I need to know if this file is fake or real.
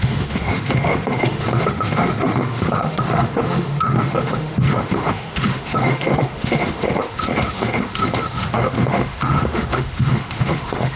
fake